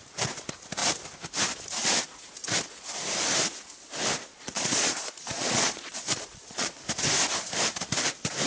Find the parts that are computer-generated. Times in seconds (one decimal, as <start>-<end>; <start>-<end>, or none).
4.3-6.8